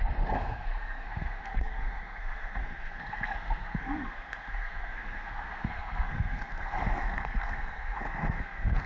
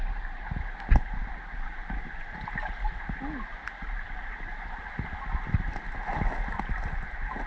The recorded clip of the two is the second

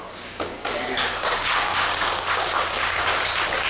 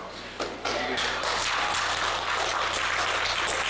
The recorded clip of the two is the second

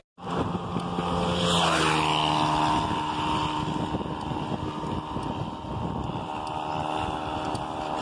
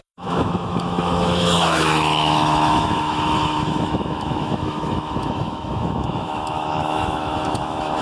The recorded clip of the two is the first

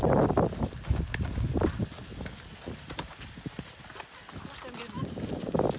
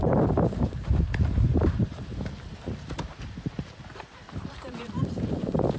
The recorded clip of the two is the first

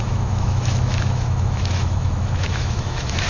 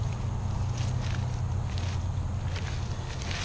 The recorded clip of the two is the second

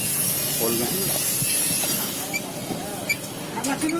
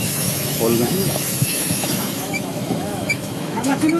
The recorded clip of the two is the first